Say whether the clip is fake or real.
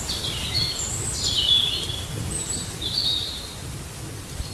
real